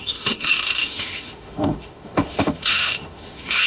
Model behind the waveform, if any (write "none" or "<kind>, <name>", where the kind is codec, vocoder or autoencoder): autoencoder, DAC-VAE